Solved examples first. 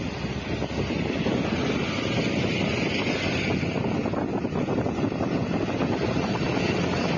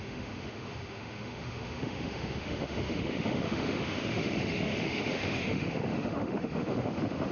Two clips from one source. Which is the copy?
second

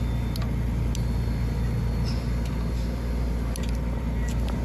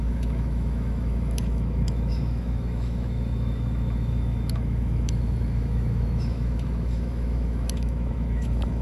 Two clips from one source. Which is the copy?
second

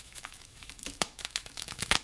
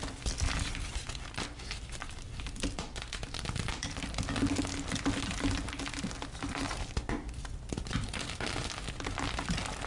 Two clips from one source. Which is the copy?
first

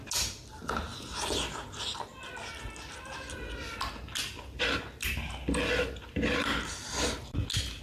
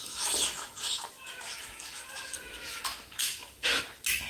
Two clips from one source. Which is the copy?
second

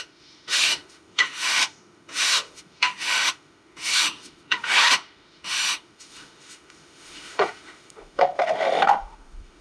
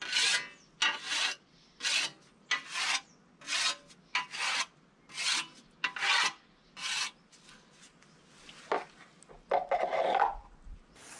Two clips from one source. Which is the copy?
first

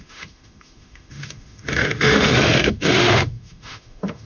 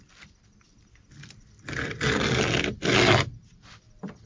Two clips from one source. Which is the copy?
first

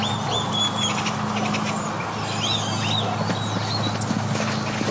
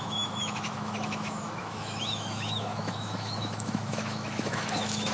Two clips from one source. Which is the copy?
second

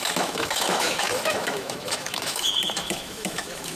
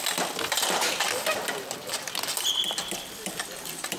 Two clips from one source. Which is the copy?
first